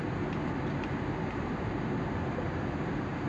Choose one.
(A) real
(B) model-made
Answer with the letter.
A